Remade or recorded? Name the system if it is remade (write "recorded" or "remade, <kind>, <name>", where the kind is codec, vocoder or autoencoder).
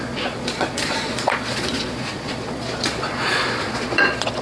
remade, vocoder, Vocos